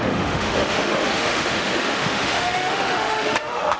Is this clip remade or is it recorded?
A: remade